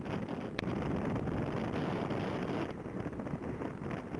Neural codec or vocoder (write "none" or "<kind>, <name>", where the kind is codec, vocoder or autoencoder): none